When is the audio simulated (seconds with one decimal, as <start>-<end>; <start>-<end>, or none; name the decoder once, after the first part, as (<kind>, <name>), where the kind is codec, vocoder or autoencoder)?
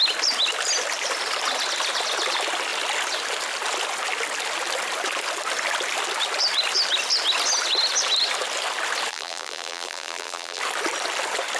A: 9.1-10.6 (vocoder, BigVGAN v2)